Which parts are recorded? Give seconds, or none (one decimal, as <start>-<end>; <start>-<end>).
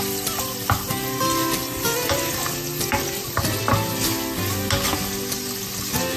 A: 0.0-1.6; 3.6-6.2